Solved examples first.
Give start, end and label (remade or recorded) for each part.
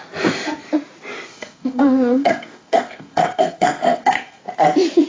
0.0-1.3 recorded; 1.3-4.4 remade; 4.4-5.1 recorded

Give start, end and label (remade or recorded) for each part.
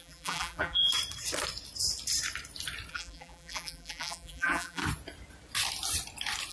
0.0-0.9 remade; 0.9-2.9 recorded; 2.9-4.8 remade; 4.8-6.5 recorded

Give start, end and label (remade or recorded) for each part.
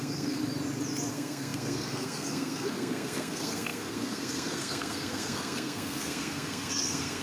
0.0-0.4 remade; 0.4-1.1 recorded; 1.1-7.2 remade